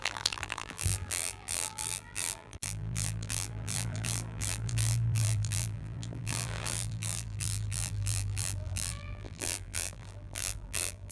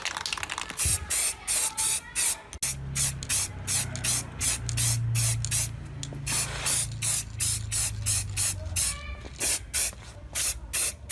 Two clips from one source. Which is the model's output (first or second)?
first